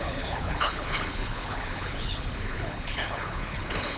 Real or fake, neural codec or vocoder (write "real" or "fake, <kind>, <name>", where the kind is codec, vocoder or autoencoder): fake, codec, HILCodec